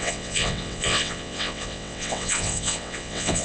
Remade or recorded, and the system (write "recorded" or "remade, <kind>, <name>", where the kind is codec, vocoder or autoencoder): remade, vocoder, WaveNeXt